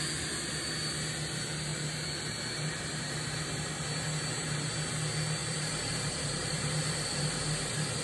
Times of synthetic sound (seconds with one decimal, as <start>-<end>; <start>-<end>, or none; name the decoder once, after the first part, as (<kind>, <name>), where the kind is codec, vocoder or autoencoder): 5.4-6.8 (vocoder, BigVGAN v2)

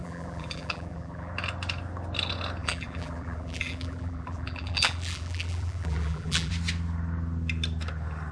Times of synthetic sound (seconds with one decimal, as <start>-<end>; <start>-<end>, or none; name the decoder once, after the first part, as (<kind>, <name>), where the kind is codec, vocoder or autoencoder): 0.0-1.3 (vocoder, BigVGAN v2); 2.6-6.5

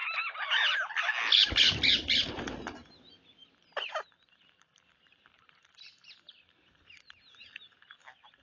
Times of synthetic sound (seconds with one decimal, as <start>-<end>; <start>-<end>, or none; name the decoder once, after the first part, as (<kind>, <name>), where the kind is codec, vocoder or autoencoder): 3.0-8.4 (vocoder, BigVGAN v2)

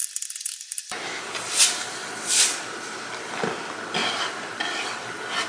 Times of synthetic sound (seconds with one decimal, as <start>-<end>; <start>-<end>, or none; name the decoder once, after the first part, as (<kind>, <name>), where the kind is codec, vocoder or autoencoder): 4.0-4.6 (vocoder, BigVGAN v2)

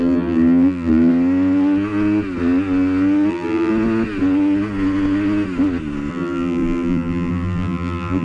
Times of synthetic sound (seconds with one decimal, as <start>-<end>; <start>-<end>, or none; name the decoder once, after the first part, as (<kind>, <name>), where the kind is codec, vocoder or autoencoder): 0.0-1.1 (vocoder, BigVGAN v2); 3.3-3.7; 6.1-8.2

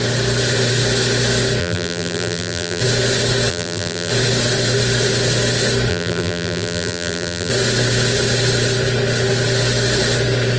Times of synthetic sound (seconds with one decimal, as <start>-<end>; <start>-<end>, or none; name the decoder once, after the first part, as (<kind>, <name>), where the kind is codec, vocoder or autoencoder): 1.6-2.8 (vocoder, BigVGAN v2); 3.5-4.1; 5.9-7.5

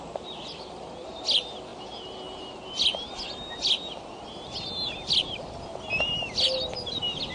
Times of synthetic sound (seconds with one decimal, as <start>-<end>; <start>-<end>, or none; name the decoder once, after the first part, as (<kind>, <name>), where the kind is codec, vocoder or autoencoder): none